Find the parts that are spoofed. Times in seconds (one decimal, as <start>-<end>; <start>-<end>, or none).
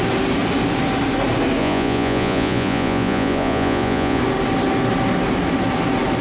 1.6-4.2